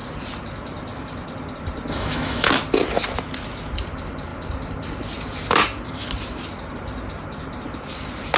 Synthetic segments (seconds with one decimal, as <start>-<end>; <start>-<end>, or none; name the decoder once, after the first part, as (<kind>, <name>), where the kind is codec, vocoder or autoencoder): 1.9-2.5 (autoencoder, DAC-VAE)